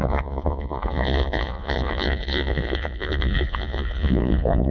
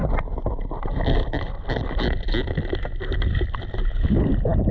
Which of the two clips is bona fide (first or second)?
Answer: second